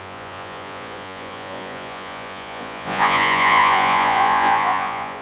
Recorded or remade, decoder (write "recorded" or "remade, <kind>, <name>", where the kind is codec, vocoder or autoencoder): remade, vocoder, Vocos